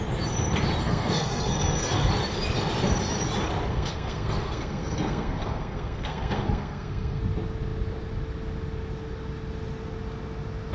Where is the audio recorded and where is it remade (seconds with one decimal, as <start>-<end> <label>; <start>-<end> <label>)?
0.0-0.8 recorded; 0.8-2.1 remade; 2.1-3.7 recorded; 3.7-7.2 remade; 7.2-10.7 recorded